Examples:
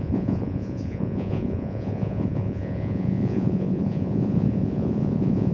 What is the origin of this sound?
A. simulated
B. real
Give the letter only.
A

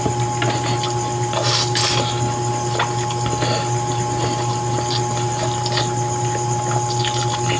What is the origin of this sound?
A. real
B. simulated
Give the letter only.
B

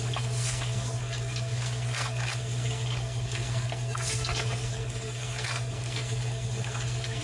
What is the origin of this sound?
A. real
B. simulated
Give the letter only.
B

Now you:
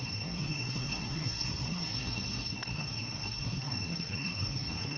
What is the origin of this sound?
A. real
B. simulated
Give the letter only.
B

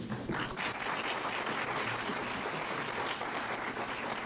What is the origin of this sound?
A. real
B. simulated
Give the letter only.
A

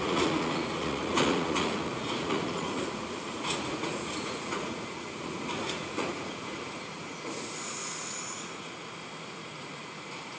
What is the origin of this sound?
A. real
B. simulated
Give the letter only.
B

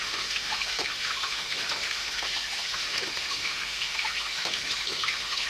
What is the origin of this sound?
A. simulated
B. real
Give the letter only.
A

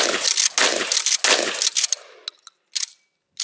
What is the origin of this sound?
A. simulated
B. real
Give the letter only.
B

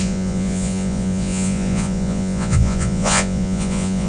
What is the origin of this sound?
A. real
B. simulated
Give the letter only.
B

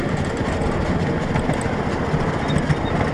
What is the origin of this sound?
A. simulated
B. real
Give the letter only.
B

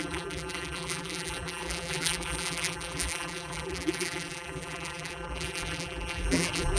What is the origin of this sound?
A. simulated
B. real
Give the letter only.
A